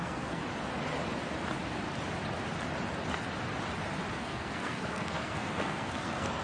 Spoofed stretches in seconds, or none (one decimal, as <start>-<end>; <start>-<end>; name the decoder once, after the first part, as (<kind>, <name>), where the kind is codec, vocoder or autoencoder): 0.0-0.4 (codec, SNAC); 4.1-6.4